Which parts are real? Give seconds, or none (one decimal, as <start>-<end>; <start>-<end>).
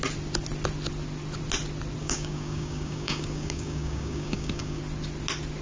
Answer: 0.0-2.0; 4.8-5.6